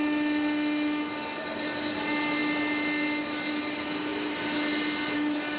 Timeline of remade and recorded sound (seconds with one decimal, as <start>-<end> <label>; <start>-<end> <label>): 0.0-5.6 recorded